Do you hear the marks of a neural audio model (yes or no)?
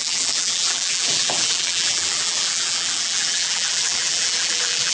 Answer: yes